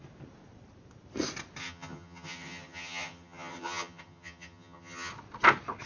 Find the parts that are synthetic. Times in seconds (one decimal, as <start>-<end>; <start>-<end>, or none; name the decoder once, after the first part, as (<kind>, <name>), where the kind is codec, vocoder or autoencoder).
1.6-5.1 (vocoder, HiFi-GAN)